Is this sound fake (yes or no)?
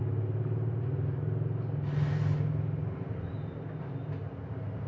no